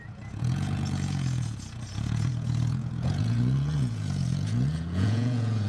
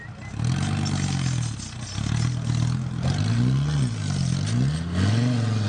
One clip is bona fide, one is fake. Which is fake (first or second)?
first